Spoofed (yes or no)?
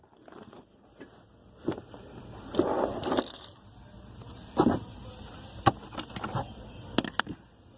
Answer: no